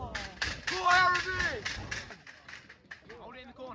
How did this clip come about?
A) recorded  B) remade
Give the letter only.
A